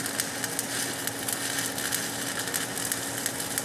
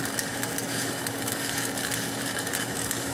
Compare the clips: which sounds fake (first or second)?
second